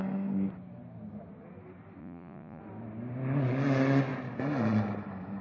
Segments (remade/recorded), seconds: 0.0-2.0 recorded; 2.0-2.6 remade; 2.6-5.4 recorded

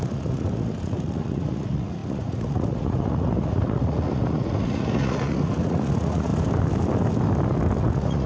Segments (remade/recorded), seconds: 0.0-6.3 remade; 6.3-7.8 recorded; 7.8-8.3 remade

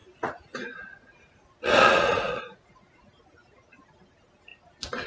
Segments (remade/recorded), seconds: 0.0-3.0 remade; 3.0-5.1 recorded

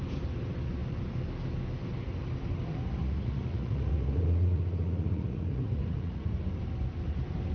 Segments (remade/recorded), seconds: 0.0-3.0 recorded; 3.0-6.3 remade; 6.3-7.5 recorded

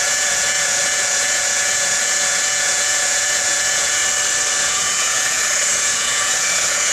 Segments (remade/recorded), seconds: 0.0-4.0 remade; 4.0-4.6 recorded; 4.6-6.9 remade